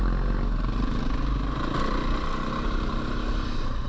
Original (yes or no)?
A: yes